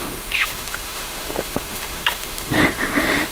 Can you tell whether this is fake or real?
fake